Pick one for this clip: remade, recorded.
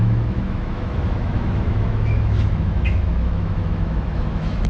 remade